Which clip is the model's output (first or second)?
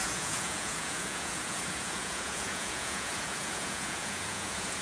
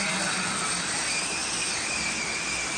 first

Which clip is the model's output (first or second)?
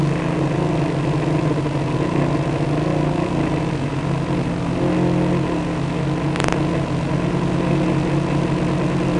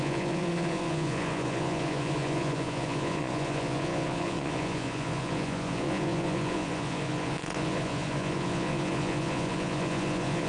second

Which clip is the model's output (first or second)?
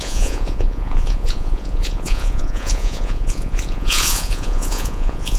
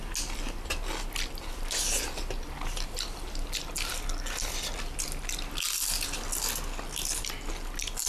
first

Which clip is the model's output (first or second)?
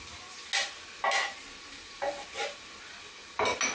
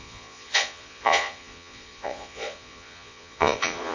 second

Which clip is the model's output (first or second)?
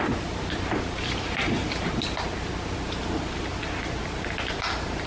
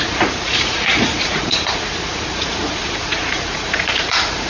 second